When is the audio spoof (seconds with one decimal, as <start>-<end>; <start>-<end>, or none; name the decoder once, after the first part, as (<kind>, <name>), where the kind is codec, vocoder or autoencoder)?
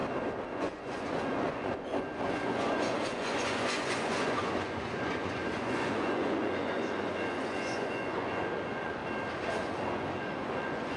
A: 0.5-9.0 (vocoder, Vocos); 9.5-11.0